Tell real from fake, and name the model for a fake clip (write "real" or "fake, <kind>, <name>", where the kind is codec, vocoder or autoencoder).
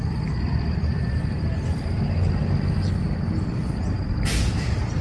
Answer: real